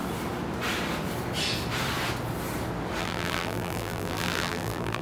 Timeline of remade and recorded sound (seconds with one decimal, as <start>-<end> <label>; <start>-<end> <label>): 0.0-3.0 recorded; 3.0-5.0 remade